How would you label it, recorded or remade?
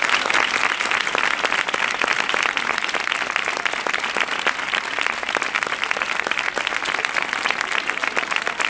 recorded